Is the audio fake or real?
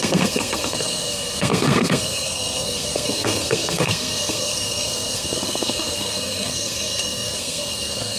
fake